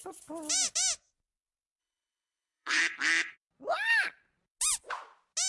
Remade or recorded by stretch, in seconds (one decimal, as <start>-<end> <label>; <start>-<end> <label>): 0.0-1.8 recorded; 1.8-2.8 remade; 2.8-5.5 recorded